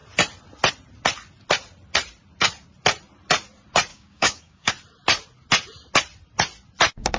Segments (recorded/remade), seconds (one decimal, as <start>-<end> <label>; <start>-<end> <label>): 0.0-3.9 recorded; 3.9-4.7 remade; 4.7-7.2 recorded